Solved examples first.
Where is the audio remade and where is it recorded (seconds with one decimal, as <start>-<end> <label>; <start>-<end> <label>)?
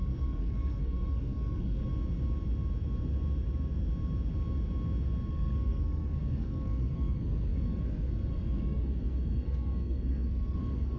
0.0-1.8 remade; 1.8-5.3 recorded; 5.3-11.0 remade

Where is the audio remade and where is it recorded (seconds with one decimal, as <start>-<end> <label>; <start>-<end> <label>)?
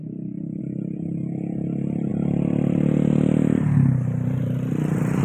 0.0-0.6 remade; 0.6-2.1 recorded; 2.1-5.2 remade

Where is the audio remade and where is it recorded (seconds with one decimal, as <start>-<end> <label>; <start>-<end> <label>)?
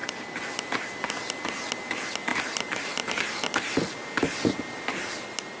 0.0-5.6 recorded